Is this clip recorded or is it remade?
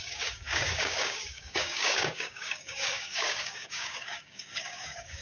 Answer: remade